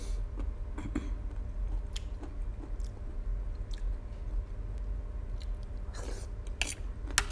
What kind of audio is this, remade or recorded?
recorded